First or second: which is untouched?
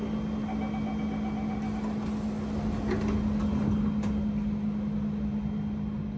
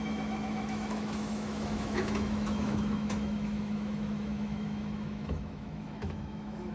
first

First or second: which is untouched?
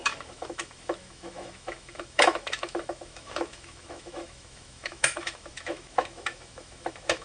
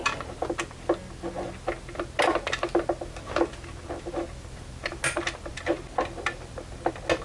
second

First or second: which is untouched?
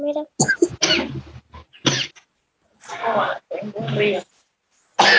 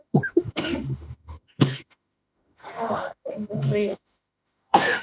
first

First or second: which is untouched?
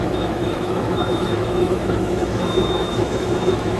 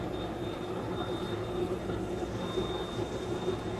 second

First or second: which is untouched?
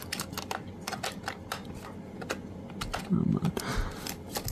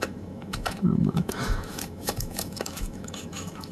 first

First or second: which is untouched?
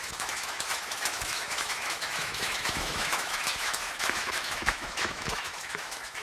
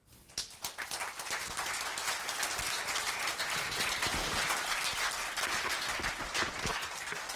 second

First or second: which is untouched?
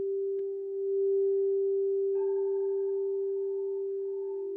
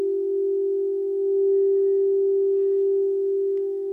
second